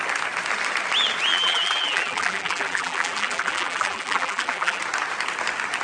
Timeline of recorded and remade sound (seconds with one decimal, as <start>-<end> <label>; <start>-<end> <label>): 0.0-1.3 recorded; 1.3-4.8 remade; 4.8-5.8 recorded